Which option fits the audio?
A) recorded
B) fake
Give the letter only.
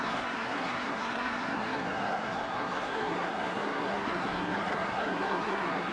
B